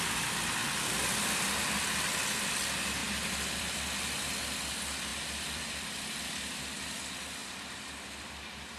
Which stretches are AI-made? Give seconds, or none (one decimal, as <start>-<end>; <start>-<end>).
0.6-1.8; 3.0-4.4; 5.1-6.8